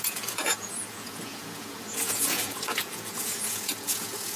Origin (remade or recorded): remade